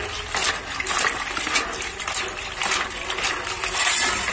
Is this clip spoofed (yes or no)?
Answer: no